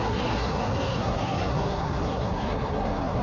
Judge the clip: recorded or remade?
remade